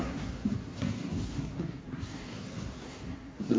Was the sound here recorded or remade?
remade